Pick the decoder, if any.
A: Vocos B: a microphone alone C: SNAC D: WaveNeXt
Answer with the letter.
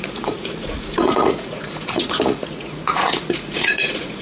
A